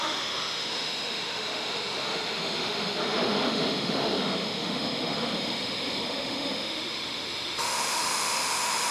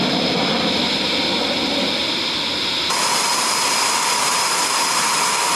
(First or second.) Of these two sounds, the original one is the second